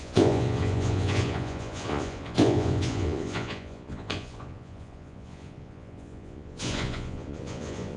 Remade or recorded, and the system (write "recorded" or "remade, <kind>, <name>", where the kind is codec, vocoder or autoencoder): remade, vocoder, Vocos